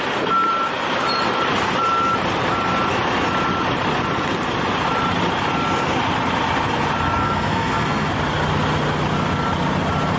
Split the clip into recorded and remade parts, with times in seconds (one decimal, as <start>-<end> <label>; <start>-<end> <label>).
0.0-7.2 recorded; 7.2-8.1 remade; 8.1-10.2 recorded